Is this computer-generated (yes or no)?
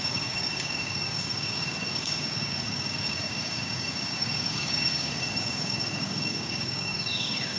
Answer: yes